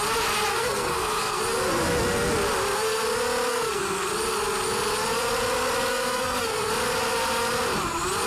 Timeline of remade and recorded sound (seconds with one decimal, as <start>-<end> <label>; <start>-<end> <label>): 0.0-0.5 recorded; 0.5-1.4 remade; 1.4-3.5 recorded; 3.5-4.1 remade; 4.1-5.9 recorded; 5.9-6.7 remade; 6.7-8.3 recorded

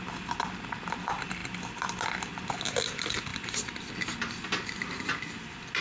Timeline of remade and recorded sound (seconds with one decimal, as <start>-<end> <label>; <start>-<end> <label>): 0.0-5.8 recorded

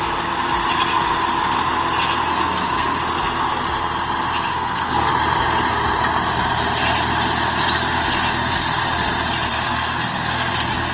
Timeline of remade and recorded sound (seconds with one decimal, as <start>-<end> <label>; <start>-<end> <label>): 0.0-2.3 recorded; 2.3-3.0 remade; 3.0-4.5 recorded; 4.5-5.1 remade; 5.1-9.5 recorded; 9.5-10.5 remade; 10.5-10.9 recorded